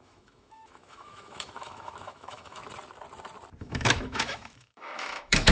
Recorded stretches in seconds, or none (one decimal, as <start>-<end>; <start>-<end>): 2.6-3.6